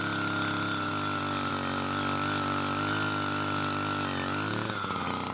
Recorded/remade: recorded